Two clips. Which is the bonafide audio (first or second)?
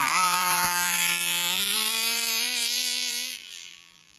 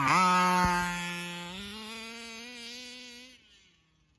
second